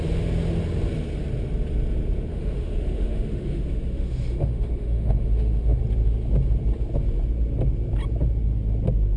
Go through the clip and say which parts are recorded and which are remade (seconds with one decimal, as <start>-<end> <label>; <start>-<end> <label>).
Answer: 0.0-2.3 recorded; 2.3-5.8 remade; 5.8-9.2 recorded